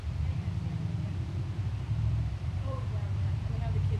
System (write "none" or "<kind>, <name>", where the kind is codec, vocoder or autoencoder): vocoder, BigVGAN v2